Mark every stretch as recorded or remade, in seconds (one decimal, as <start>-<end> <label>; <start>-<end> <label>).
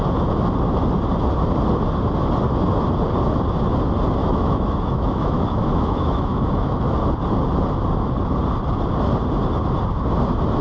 0.0-4.2 recorded; 4.2-6.8 remade; 6.8-10.6 recorded